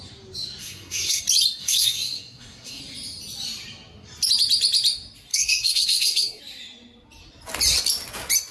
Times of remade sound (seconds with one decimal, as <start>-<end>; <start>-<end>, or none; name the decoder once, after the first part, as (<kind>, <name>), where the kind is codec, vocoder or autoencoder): 0.6-1.2 (codec, SNAC); 1.6-2.8; 5.3-6.4